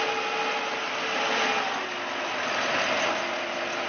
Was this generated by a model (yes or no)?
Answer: no